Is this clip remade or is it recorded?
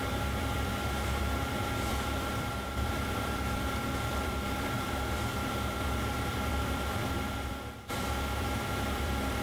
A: remade